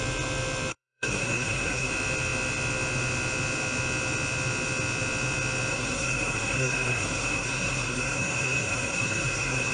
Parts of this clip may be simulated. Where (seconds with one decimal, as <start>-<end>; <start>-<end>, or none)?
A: 0.7-1.9; 5.7-9.7